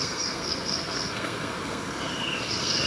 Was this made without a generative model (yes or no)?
no